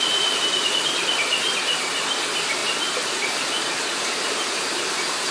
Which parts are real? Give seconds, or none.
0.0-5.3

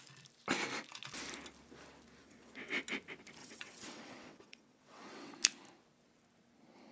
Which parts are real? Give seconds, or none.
0.0-2.2; 2.8-3.4; 5.3-6.9

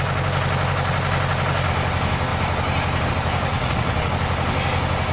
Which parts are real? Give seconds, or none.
0.0-3.5; 4.1-5.1

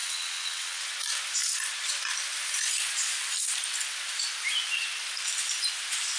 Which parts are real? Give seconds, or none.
0.8-6.2

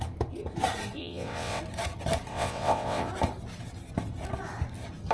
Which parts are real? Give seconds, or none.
0.0-1.0; 1.6-2.3; 3.1-5.1

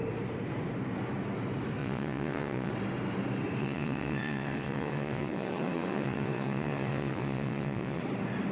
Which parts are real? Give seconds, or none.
0.0-1.8; 2.7-3.6; 8.0-8.5